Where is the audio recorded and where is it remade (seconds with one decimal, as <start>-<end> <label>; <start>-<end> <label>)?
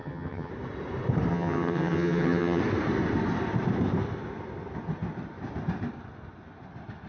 0.0-0.5 remade; 0.5-1.3 recorded; 1.3-2.6 remade; 2.6-7.1 recorded